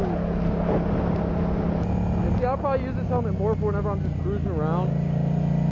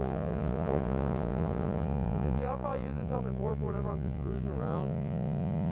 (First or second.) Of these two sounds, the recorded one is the first